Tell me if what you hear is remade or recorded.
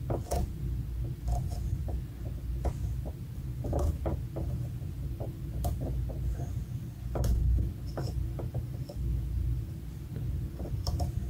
recorded